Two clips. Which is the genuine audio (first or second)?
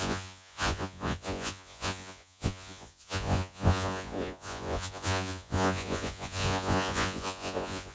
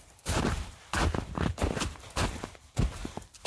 second